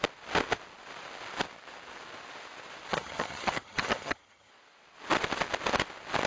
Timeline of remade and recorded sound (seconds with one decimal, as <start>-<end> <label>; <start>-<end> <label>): 0.0-2.9 recorded; 2.9-4.5 remade; 4.5-6.3 recorded